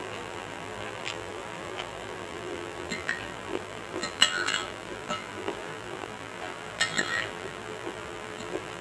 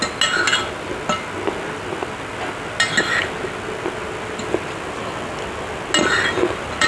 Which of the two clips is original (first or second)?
second